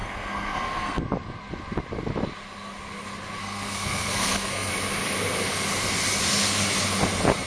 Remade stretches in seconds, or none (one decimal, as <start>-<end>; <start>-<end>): 0.0-1.0; 3.4-4.7